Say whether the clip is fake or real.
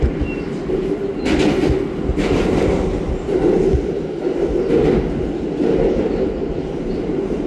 real